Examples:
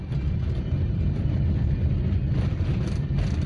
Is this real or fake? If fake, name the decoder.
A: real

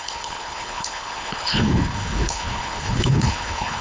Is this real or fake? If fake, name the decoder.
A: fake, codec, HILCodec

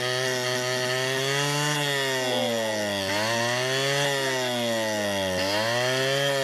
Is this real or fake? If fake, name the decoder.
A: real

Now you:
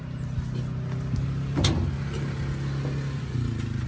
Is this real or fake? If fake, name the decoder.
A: real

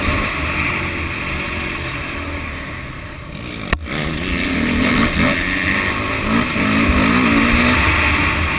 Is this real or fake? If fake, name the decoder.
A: real